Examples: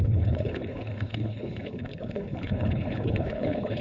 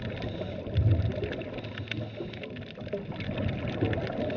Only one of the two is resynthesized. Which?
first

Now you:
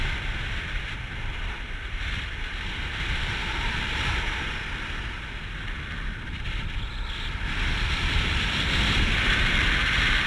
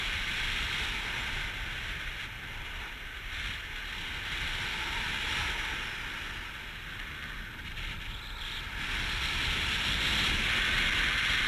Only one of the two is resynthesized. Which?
first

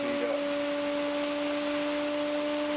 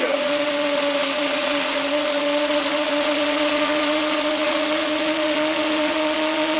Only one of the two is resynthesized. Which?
second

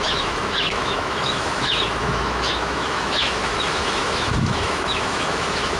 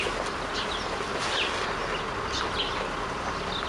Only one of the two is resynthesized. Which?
first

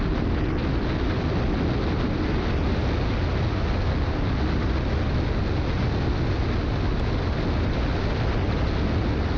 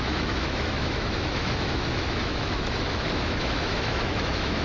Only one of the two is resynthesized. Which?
second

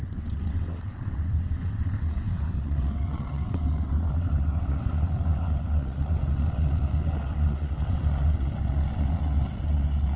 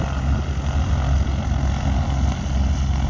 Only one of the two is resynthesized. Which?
first